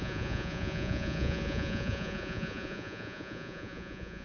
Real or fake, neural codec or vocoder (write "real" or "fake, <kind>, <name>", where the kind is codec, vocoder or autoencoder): fake, vocoder, Vocos